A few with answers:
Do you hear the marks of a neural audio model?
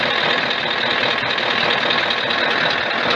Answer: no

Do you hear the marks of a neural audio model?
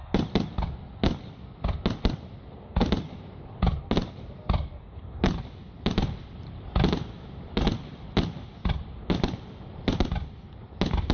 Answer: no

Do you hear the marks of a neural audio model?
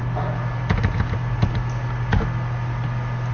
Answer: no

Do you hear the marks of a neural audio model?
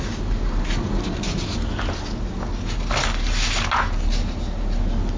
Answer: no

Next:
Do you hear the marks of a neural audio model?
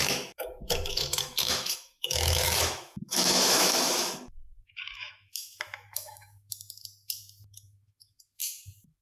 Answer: yes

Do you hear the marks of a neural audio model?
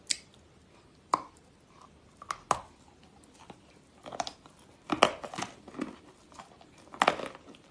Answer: no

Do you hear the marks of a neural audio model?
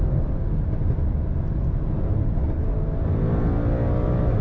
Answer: no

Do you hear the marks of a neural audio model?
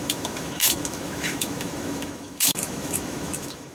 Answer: yes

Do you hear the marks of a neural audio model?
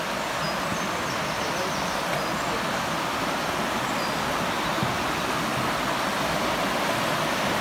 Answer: no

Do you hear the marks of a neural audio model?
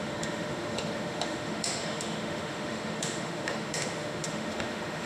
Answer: yes